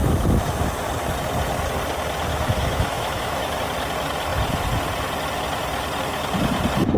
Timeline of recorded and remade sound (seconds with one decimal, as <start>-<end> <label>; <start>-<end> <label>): 0.0-0.7 remade; 0.7-2.3 recorded; 2.3-3.6 remade; 3.6-7.0 recorded